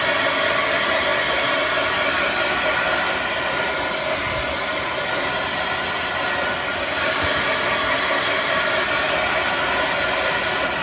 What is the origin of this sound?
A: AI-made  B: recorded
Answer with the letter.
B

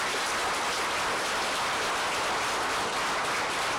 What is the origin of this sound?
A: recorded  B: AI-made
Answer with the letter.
B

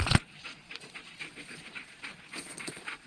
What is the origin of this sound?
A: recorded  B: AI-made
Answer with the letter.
B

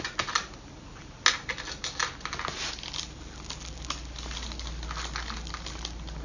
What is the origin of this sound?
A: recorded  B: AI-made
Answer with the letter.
A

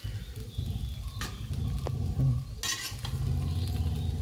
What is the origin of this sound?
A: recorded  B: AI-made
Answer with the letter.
A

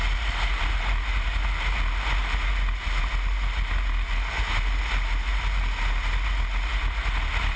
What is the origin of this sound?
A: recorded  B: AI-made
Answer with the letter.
A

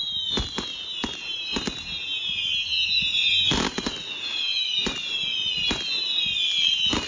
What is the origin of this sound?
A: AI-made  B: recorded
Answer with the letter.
B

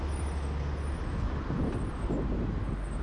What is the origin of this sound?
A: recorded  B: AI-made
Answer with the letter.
A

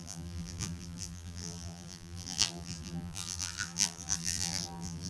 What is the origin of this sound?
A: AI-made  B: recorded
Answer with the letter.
A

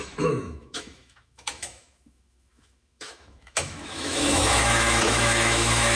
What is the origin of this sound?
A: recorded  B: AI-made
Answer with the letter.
B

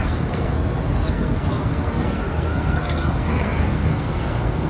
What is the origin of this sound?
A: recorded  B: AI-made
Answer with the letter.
B